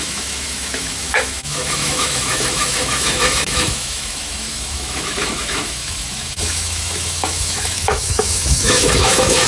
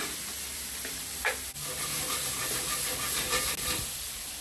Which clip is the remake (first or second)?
first